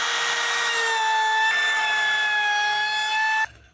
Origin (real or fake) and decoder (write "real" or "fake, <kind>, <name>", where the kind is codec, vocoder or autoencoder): real